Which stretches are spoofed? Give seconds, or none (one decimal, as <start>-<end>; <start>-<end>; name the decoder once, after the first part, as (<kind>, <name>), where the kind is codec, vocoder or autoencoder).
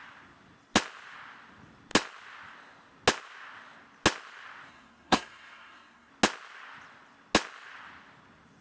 4.7-6.1 (codec, SNAC)